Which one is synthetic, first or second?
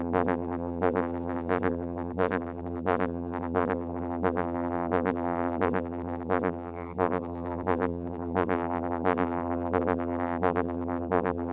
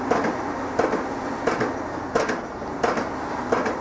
first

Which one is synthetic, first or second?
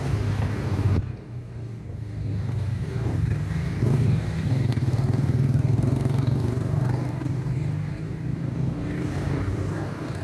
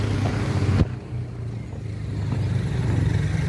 first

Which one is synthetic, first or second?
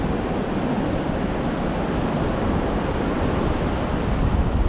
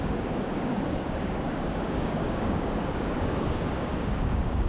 second